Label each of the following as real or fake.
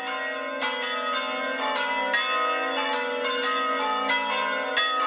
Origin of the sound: real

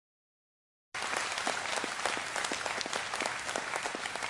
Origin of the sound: real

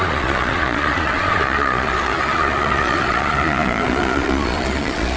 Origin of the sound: fake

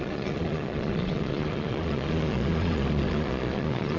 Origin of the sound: fake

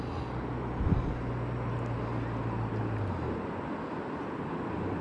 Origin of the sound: real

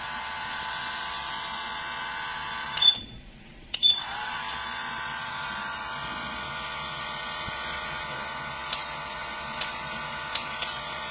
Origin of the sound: fake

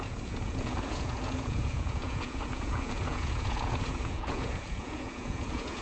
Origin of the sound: fake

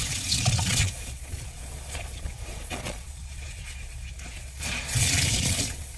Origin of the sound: fake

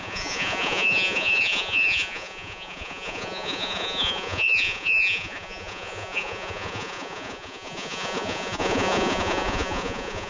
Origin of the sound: fake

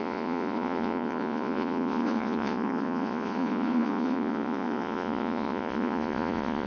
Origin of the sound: fake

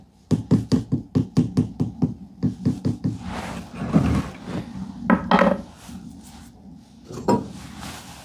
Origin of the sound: real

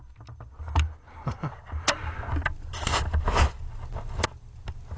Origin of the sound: real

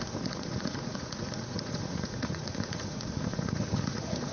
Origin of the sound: fake